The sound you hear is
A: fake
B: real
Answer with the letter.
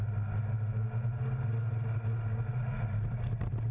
B